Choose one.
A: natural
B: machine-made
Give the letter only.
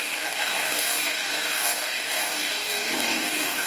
B